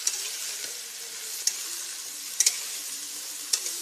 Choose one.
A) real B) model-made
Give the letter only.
A